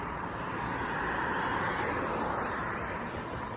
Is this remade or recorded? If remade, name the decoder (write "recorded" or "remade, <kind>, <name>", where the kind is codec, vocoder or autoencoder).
recorded